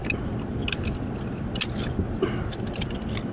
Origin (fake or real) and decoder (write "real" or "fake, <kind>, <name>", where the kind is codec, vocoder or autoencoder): real